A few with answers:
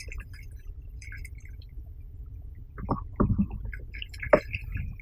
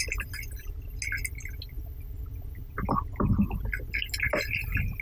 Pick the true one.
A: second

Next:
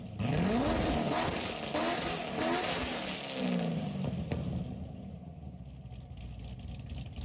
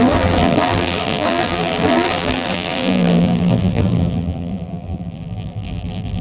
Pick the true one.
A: first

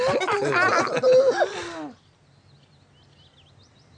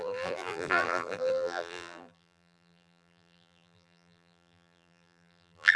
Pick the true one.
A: first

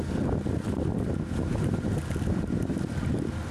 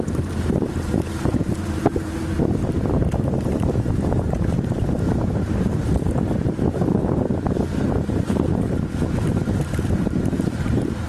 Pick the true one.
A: first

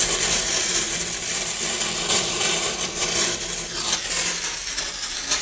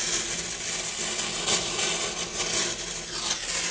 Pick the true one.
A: second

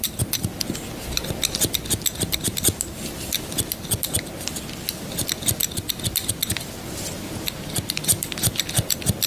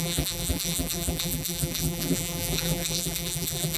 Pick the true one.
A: first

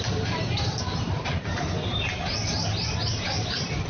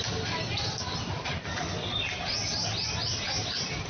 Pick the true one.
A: second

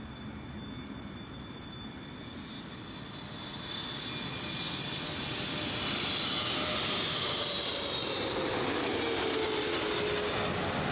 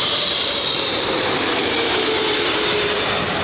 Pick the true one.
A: first